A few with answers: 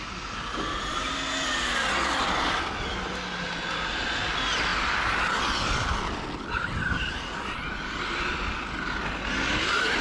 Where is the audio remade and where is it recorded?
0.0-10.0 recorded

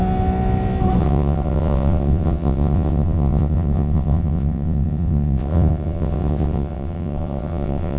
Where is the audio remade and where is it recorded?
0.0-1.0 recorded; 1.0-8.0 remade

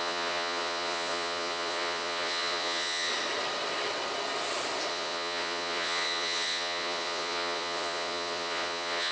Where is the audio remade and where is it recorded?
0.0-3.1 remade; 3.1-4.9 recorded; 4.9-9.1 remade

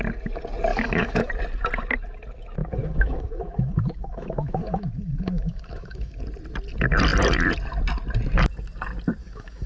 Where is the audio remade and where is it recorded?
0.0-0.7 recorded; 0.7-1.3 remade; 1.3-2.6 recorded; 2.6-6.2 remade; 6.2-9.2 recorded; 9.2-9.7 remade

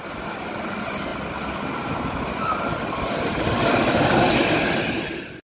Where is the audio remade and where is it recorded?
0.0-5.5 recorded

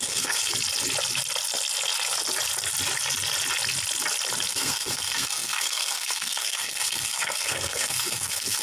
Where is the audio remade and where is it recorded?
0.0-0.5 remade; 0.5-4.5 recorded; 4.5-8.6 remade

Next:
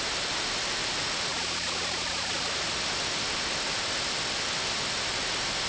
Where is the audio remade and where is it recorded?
0.0-1.3 recorded; 1.3-2.5 remade; 2.5-5.7 recorded